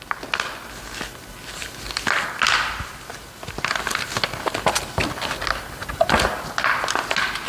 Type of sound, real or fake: real